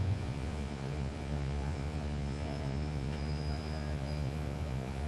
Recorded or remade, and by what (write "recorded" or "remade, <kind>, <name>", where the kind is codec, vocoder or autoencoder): remade, vocoder, Vocos